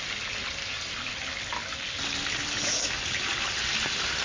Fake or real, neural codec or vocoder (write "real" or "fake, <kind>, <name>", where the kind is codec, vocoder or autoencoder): real